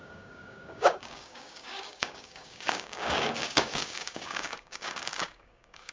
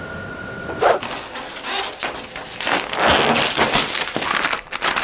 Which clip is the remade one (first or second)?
first